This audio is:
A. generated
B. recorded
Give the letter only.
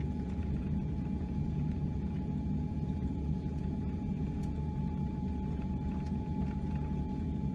A